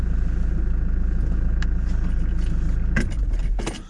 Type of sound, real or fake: real